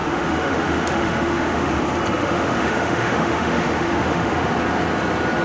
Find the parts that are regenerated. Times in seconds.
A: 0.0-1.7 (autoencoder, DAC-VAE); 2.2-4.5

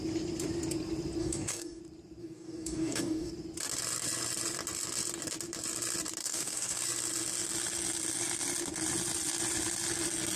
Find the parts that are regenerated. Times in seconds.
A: 1.2-1.8 (codec, DAC); 2.2-3.3; 6.2-6.8

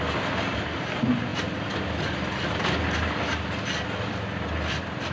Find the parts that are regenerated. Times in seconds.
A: none

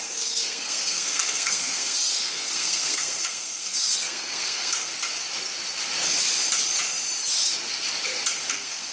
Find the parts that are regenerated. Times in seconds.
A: 0.0-4.9 (codec, SNAC); 8.5-8.9

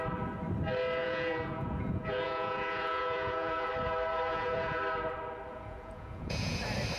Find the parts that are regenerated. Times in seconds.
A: 1.0-3.7 (vocoder, Vocos); 4.3-4.8; 5.5-6.6